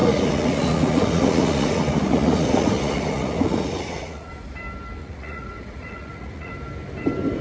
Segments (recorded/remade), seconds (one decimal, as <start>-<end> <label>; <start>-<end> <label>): 0.0-4.3 remade; 4.3-5.0 recorded; 5.0-6.5 remade; 6.5-7.4 recorded